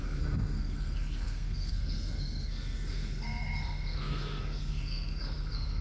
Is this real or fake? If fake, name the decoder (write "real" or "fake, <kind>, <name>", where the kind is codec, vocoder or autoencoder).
fake, codec, SNAC